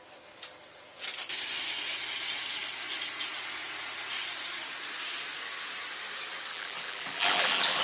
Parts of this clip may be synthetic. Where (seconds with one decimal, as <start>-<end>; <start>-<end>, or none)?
6.5-7.8